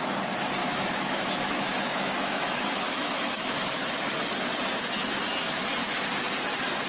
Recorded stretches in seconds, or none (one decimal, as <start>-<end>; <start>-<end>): 0.0-0.6; 3.8-6.9